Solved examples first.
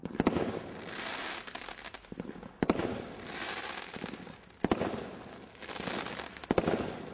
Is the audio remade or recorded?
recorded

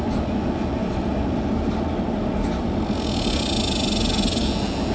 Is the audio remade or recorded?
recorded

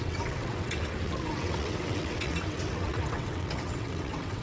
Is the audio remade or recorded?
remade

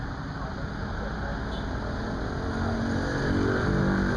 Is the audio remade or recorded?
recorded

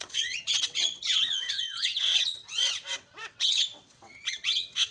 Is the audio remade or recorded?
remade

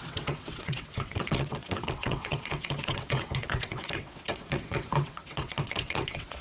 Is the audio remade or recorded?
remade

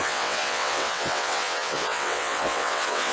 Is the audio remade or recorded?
remade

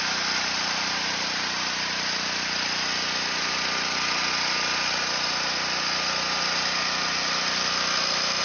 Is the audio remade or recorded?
recorded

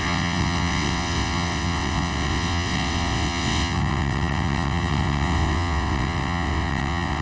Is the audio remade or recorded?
remade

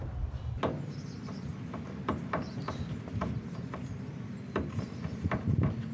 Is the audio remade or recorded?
recorded